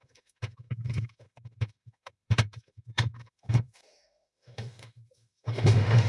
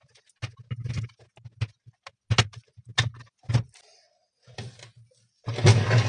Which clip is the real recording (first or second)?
second